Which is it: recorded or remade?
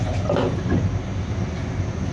recorded